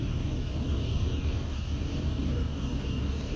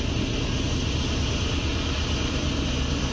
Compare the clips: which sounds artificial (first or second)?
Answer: first